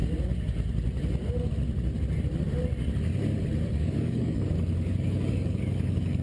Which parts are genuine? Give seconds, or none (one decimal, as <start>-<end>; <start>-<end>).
0.0-3.7